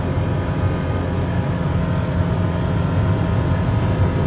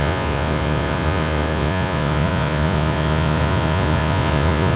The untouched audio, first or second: first